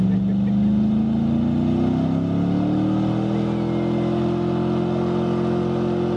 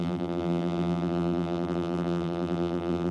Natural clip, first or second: first